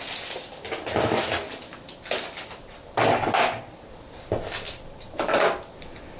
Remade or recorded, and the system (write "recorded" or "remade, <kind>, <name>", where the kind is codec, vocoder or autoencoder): recorded